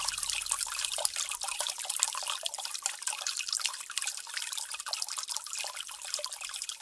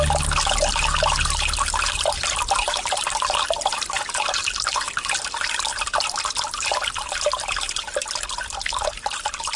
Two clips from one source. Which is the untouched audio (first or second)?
second